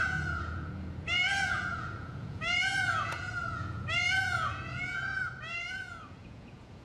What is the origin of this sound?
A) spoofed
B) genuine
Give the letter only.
A